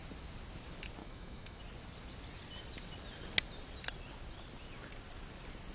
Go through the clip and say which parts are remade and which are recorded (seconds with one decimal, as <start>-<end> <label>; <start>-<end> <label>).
0.0-1.0 recorded; 1.0-1.6 remade; 1.6-5.7 recorded